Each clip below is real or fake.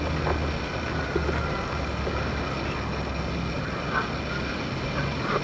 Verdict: real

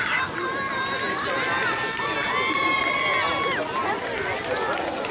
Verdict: real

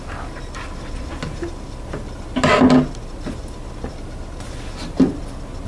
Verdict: real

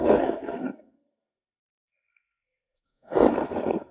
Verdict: fake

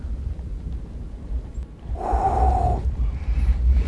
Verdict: real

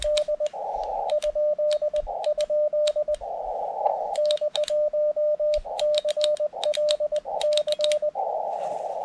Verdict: real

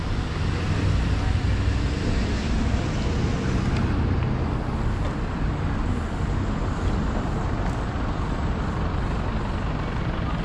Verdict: real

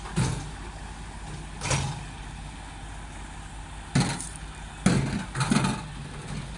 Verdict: real